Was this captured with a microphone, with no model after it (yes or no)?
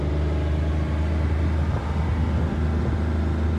yes